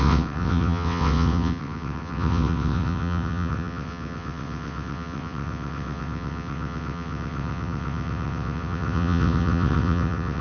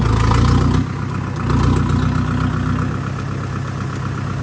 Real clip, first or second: second